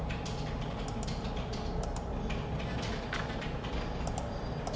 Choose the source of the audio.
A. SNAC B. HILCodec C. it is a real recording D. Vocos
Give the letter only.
C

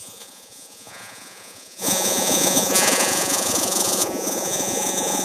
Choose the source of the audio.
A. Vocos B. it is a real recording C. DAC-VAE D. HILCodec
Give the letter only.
A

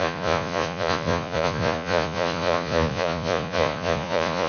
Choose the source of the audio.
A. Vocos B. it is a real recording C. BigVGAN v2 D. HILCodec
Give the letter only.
A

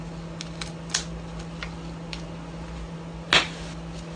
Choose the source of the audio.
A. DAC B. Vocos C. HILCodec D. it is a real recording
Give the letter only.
D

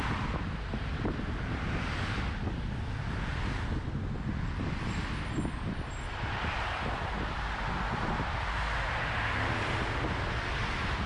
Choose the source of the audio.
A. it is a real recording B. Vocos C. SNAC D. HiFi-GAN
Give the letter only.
A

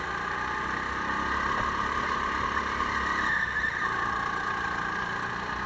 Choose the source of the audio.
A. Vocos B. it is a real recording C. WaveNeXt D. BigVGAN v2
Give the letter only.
B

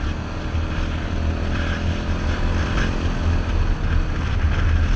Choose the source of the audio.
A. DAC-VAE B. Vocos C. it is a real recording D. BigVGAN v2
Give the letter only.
C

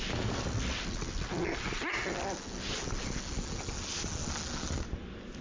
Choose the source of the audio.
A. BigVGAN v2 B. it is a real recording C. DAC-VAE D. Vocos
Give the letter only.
B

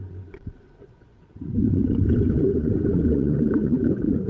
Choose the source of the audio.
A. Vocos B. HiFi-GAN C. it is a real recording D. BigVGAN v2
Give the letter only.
A